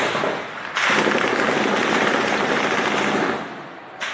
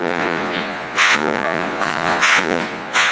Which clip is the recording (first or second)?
first